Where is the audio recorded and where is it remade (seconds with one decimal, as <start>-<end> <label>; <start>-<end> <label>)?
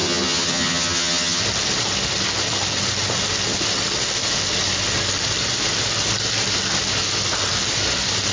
0.0-1.4 remade; 1.4-8.3 recorded